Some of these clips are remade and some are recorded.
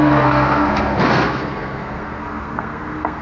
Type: remade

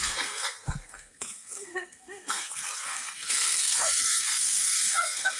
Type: remade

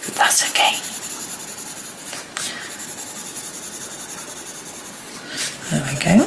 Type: recorded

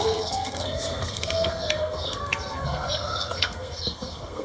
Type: remade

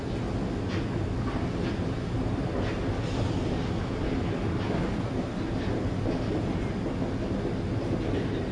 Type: recorded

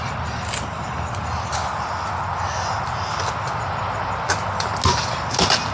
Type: recorded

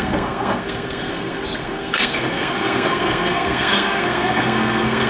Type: remade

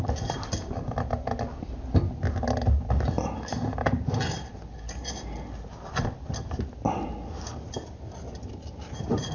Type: recorded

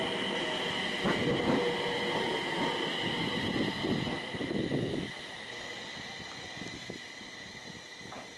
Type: recorded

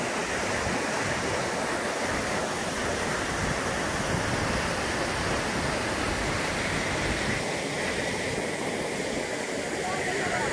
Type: recorded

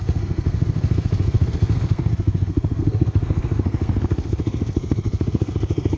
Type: remade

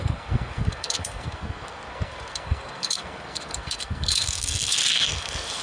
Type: remade